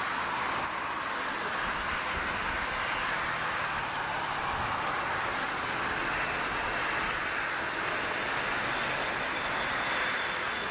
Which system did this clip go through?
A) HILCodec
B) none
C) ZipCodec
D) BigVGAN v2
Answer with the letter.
B